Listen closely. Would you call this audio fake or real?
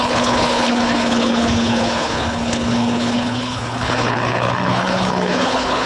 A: fake